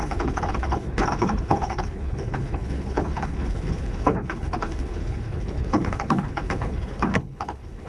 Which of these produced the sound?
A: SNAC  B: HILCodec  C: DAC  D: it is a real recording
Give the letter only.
B